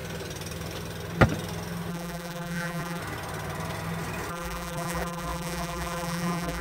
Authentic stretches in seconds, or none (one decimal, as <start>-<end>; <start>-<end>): 0.0-1.9; 3.0-4.3